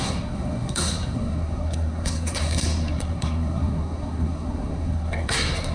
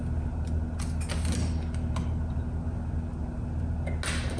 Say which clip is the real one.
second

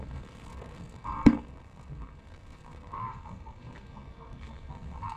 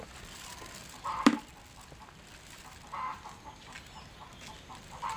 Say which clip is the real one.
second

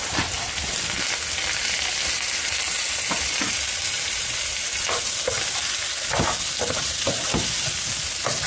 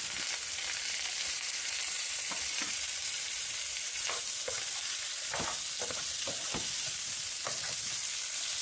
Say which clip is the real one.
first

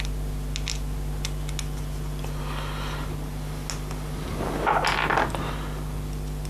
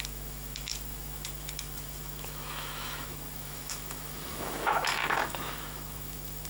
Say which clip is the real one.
first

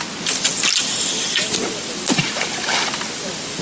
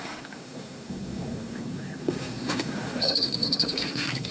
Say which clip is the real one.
first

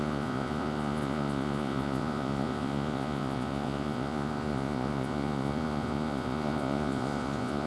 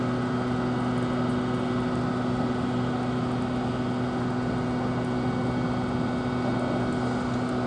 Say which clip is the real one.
second